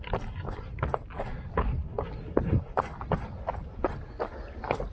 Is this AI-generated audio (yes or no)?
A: no